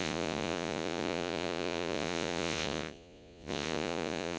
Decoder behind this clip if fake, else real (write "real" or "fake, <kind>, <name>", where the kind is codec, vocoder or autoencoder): fake, vocoder, Vocos